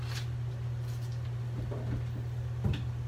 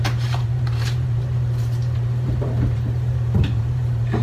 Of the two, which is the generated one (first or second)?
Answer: second